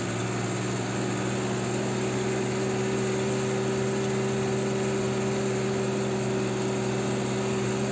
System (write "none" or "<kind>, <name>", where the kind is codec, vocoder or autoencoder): none